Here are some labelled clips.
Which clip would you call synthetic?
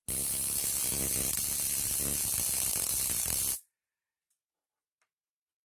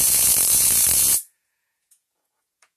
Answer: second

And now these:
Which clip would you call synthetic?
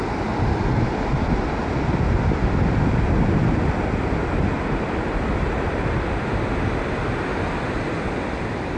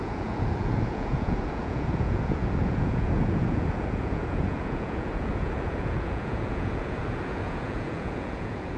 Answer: second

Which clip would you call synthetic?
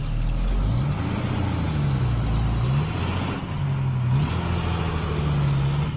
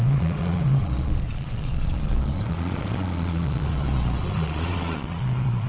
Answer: second